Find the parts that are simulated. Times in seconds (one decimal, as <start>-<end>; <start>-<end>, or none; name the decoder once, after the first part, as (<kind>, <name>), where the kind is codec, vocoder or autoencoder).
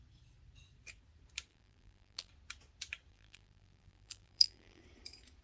1.5-2.3 (vocoder, BigVGAN v2); 3.1-4.8